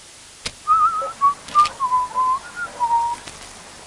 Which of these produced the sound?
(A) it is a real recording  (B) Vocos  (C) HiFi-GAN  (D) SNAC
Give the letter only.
A